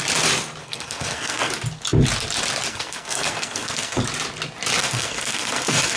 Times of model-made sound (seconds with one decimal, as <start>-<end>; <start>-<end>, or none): 0.6-1.5; 2.7-4.0; 4.8-6.0